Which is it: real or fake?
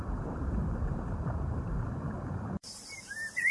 fake